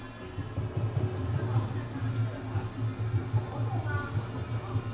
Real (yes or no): yes